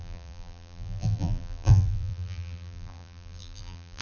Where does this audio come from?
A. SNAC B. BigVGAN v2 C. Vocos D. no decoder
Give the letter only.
B